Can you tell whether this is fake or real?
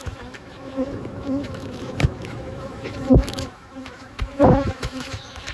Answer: fake